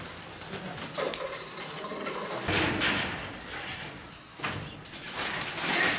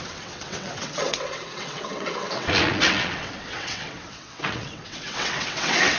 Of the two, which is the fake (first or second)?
second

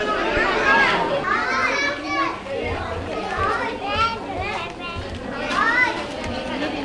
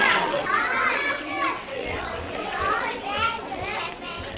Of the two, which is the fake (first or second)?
second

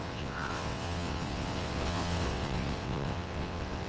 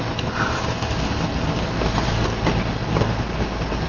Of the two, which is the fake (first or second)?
first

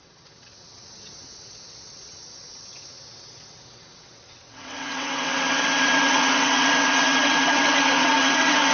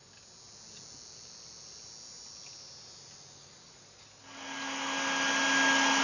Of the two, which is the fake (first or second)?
first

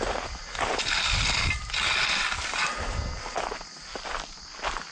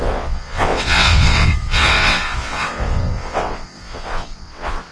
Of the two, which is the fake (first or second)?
second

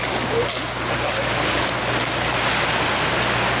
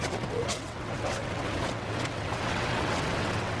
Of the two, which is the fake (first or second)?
second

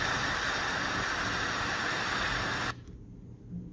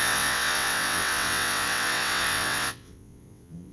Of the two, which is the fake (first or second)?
second